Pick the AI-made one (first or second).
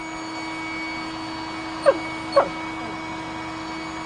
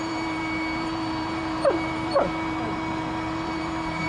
second